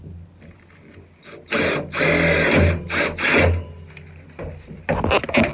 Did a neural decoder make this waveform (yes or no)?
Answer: no